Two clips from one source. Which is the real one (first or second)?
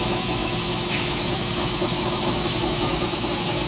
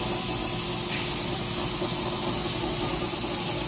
second